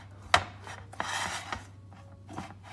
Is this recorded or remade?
recorded